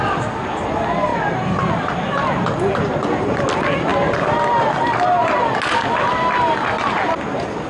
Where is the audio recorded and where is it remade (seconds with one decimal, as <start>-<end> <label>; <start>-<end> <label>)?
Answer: 0.0-7.7 recorded